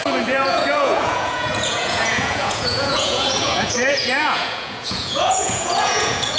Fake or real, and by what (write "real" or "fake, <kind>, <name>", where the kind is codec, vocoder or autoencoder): fake, vocoder, Vocos